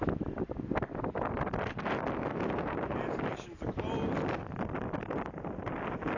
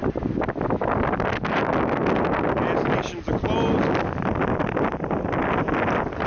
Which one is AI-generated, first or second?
first